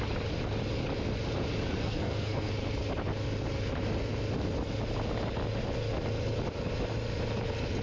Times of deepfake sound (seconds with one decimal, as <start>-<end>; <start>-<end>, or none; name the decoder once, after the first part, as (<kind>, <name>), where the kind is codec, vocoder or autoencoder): 1.8-2.5 (codec, SNAC)